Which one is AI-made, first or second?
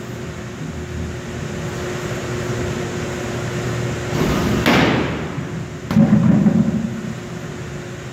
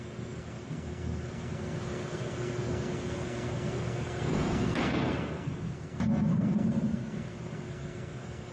second